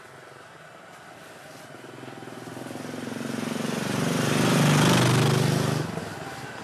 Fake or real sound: real